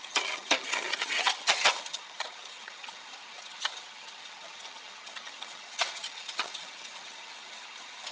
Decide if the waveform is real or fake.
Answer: fake